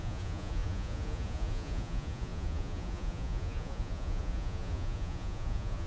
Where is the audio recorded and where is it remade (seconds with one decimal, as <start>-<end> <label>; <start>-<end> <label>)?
0.0-5.9 remade